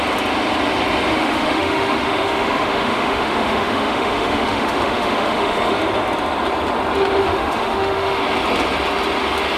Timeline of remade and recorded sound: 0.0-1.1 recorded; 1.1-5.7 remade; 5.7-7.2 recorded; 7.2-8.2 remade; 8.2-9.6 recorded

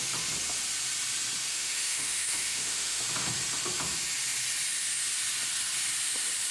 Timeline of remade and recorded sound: 0.0-1.5 recorded; 1.5-3.0 remade; 3.0-6.5 recorded